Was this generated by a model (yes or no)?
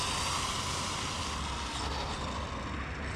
no